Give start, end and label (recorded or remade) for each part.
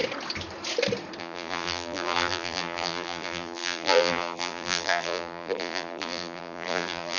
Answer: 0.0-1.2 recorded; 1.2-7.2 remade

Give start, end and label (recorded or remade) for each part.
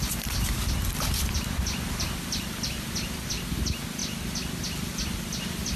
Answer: 0.0-4.0 remade; 4.0-4.6 recorded; 4.6-5.8 remade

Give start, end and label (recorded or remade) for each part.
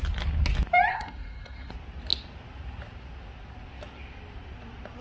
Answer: 0.0-0.9 recorded; 0.9-1.7 remade; 1.7-5.0 recorded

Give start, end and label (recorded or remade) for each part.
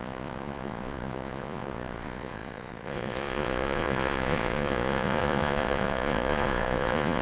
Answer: 0.0-7.2 remade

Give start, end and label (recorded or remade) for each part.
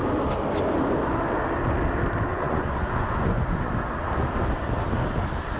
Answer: 0.0-2.3 recorded; 2.3-3.7 remade; 3.7-5.6 recorded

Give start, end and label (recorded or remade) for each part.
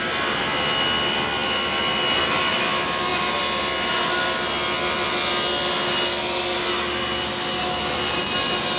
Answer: 0.0-8.8 recorded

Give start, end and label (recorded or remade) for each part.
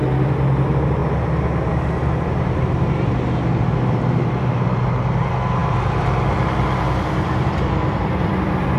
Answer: 0.0-1.0 remade; 1.0-4.5 recorded; 4.5-8.8 remade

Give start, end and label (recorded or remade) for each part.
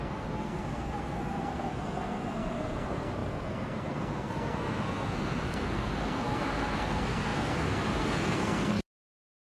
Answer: 0.0-9.6 remade